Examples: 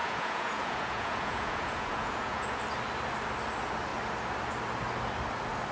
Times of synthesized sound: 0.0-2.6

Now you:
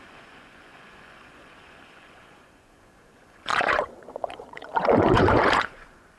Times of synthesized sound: 0.0-6.2

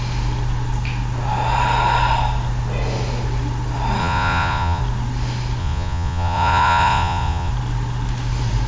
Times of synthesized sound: 4.0-4.8; 5.6-7.5

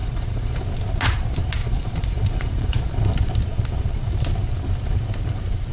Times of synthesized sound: 0.0-0.6; 1.6-3.0

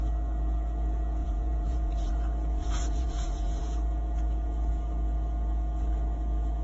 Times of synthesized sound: 1.2-2.1; 2.6-3.6

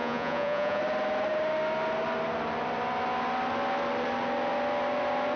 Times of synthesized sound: 0.0-0.8

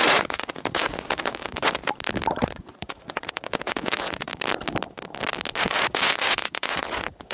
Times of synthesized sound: 0.0-1.8; 2.4-4.3; 5.6-7.3

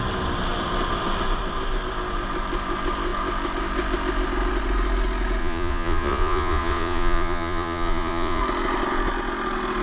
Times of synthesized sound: 5.4-8.4